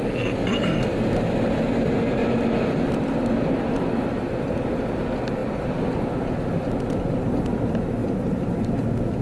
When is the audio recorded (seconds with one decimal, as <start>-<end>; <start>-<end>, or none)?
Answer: 0.0-9.2